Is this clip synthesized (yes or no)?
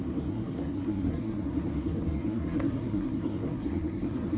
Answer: yes